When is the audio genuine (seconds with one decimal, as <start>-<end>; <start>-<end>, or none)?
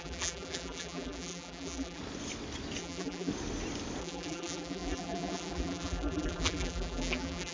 2.0-2.8; 3.3-4.0